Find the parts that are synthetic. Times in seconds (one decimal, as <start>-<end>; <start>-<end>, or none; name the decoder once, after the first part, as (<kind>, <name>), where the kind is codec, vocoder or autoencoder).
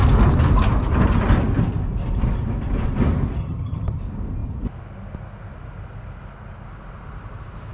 3.4-4.0 (vocoder, HiFi-GAN)